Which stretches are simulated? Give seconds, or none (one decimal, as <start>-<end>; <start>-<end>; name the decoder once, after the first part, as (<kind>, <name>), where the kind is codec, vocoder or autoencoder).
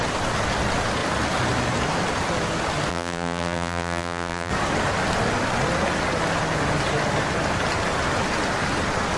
2.9-4.5 (vocoder, BigVGAN v2)